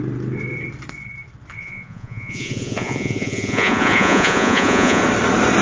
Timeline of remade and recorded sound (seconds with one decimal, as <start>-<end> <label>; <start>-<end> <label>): 0.0-1.6 recorded; 1.6-5.0 remade; 5.0-5.6 recorded